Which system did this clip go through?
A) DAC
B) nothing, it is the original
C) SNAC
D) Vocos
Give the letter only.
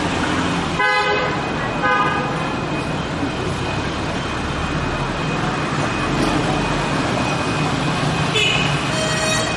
B